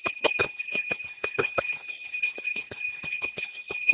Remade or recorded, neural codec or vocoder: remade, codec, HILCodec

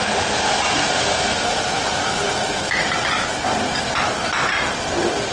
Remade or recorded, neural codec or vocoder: recorded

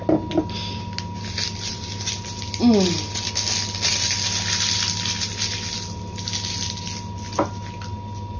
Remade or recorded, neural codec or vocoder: recorded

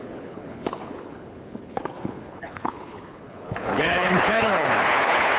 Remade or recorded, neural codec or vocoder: remade, codec, HILCodec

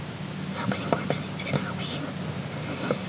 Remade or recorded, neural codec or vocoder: recorded